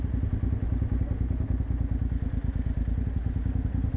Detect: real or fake real